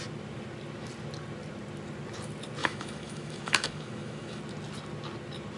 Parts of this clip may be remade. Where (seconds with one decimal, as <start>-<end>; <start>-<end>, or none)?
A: 2.6-4.4